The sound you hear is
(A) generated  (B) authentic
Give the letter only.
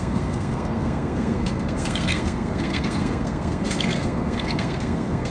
A